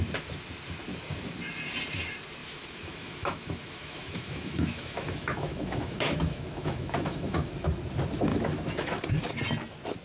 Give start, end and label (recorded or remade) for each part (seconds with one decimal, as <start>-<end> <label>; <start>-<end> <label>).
0.0-2.4 recorded; 2.4-7.5 remade; 7.5-8.3 recorded; 8.3-9.0 remade; 9.0-10.0 recorded